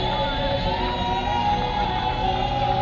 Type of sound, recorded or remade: recorded